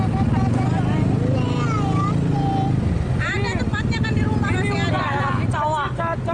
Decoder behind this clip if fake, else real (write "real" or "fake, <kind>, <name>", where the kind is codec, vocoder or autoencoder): real